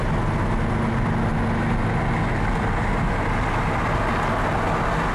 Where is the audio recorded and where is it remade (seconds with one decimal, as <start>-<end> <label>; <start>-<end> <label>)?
0.0-5.1 recorded